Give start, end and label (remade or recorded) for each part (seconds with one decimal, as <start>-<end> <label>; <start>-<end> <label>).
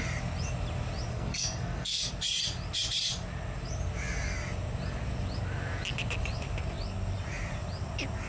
0.0-1.1 recorded; 1.1-2.1 remade; 2.1-8.3 recorded